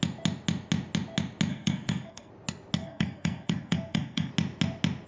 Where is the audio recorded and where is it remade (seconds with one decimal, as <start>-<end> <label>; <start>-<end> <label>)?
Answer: 0.0-1.5 recorded; 1.5-2.3 remade; 2.3-2.8 recorded; 2.8-4.3 remade; 4.3-5.1 recorded